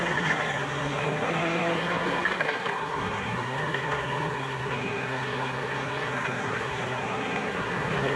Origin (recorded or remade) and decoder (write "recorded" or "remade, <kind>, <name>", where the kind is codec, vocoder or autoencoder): remade, codec, SNAC